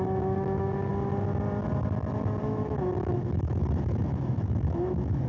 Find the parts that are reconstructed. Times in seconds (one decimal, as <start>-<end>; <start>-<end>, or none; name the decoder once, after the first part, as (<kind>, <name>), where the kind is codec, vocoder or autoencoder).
0.0-0.9 (autoencoder, DAC-VAE); 2.4-5.3